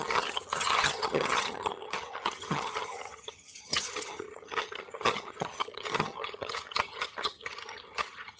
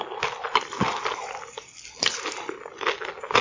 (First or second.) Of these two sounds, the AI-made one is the first